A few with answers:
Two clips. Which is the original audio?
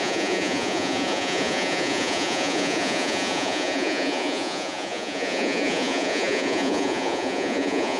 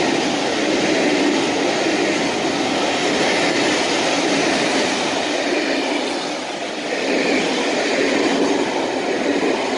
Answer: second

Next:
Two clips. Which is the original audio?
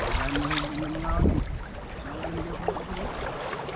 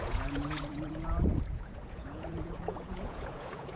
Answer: first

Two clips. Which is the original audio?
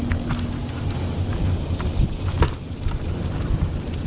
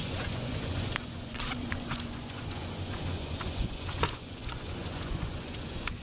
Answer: first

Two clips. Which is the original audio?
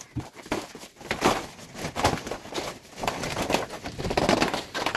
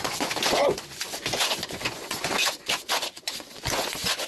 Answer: first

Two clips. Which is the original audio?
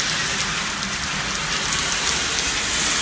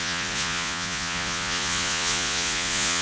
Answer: first